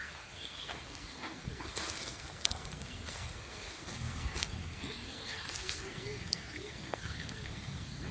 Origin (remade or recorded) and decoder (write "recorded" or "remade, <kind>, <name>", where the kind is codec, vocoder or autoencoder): remade, codec, SNAC